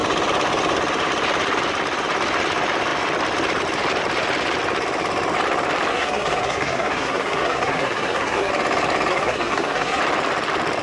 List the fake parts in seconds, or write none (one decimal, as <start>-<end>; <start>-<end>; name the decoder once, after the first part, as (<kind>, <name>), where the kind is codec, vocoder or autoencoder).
5.9-8.5 (codec, SNAC); 9.1-10.0